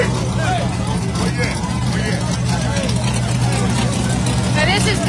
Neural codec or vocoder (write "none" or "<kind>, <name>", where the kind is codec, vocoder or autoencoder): none